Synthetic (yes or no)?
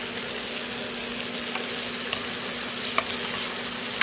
no